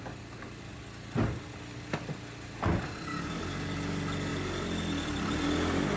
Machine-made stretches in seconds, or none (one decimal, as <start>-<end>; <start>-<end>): none